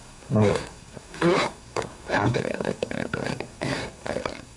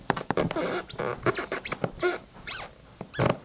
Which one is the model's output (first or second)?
first